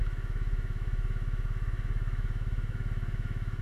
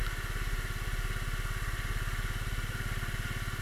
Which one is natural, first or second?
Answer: second